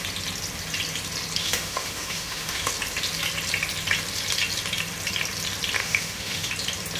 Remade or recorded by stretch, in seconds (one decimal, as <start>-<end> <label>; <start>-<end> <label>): 0.0-1.4 recorded; 1.4-2.7 remade; 2.7-5.8 recorded; 5.8-6.5 remade; 6.5-7.0 recorded